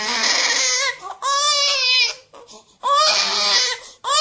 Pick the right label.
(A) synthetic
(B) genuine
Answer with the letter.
B